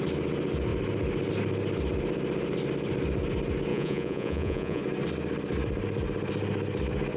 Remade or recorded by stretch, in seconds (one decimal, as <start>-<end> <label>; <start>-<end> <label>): 0.0-3.7 recorded; 3.7-4.8 remade; 4.8-7.2 recorded